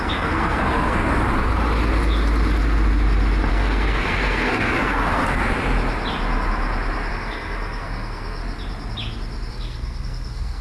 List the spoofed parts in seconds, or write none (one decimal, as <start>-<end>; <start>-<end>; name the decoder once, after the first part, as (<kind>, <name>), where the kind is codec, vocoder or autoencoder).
0.0-1.0 (codec, SNAC); 3.5-5.4; 7.1-8.4; 9.5-10.6